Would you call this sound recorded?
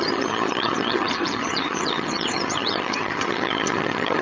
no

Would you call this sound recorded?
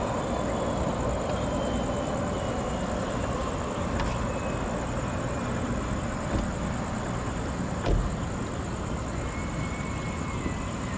yes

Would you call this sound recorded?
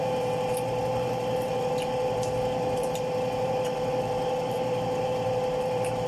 no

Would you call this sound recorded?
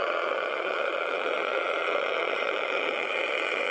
no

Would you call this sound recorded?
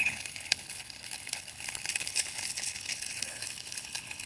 no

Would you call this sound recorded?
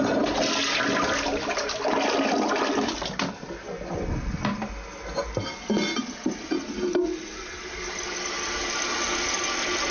yes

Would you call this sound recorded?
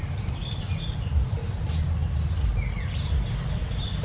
yes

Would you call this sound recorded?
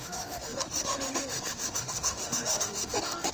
no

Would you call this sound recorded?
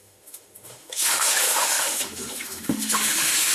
no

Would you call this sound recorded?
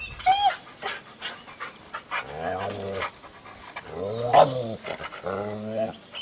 yes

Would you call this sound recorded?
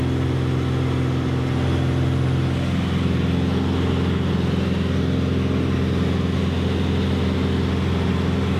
yes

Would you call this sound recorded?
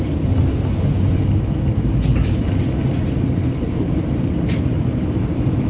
yes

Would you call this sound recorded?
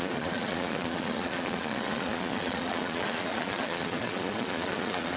no